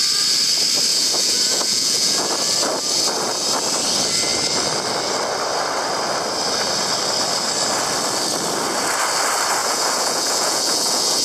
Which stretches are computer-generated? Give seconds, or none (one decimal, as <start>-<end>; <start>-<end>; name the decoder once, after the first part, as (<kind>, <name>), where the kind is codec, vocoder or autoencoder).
0.9-2.3 (vocoder, Vocos); 9.6-11.2